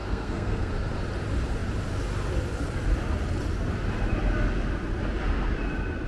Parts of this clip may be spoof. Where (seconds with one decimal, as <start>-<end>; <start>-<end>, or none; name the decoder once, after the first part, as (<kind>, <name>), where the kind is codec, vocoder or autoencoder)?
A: 0.0-0.7 (codec, SNAC)